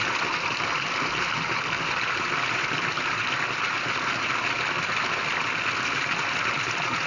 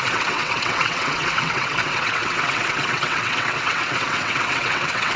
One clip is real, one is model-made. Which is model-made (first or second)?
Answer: second